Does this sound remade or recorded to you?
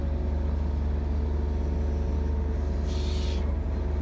recorded